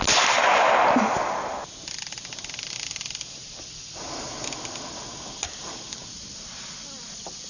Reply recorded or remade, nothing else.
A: recorded